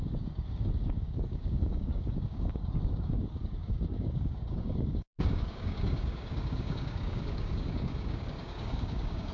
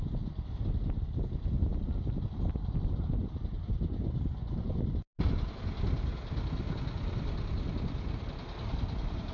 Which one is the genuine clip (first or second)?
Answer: second